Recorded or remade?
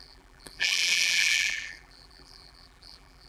remade